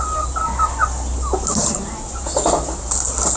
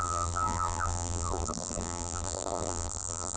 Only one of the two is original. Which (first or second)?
first